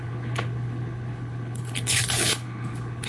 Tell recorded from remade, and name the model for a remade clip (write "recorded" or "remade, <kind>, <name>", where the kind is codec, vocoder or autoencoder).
remade, codec, HILCodec